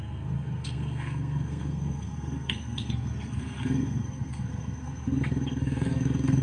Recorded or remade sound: remade